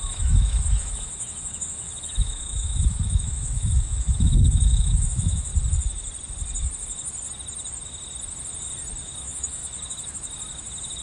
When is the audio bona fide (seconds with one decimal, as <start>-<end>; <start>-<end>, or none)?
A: 5.5-9.2; 9.6-11.0